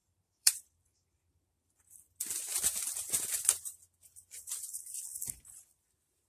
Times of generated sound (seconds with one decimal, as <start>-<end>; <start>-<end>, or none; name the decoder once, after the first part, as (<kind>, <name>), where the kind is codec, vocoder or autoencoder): 0.0-1.8 (vocoder, BigVGAN v2)